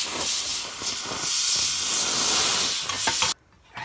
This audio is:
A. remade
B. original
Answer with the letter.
B